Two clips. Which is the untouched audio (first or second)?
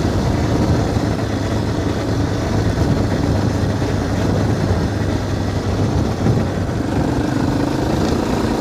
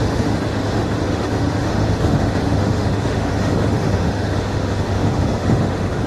first